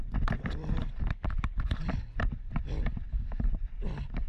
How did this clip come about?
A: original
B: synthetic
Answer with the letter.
B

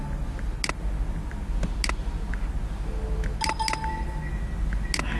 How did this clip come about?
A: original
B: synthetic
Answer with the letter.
A